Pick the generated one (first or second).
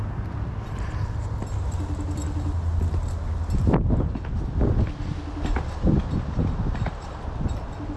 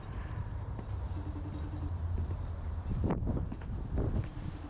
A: second